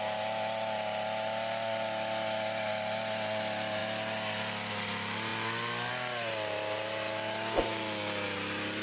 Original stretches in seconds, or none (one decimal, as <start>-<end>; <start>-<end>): 0.0-8.8